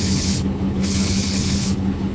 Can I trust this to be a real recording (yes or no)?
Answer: no